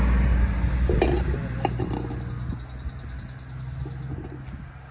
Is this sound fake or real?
real